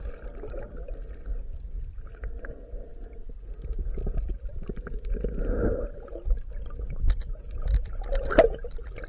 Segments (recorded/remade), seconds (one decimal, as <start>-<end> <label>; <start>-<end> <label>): 0.0-9.1 recorded

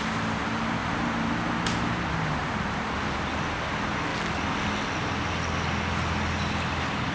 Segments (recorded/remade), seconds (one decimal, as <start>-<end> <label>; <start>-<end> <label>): 0.0-0.8 recorded; 0.8-1.3 remade; 1.3-2.4 recorded; 2.4-3.0 remade; 3.0-7.1 recorded

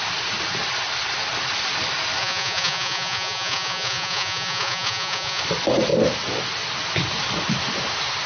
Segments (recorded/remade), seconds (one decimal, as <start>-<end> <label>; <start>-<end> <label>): 0.0-2.2 recorded; 2.2-5.4 remade; 5.4-8.3 recorded